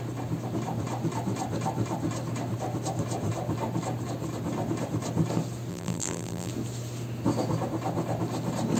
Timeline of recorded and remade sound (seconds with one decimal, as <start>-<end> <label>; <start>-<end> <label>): 0.0-5.7 recorded; 5.7-6.5 remade; 6.5-8.8 recorded